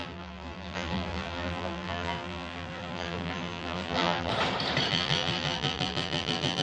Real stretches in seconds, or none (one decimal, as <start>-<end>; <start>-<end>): 4.3-4.9